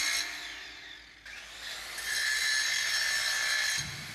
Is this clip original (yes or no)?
yes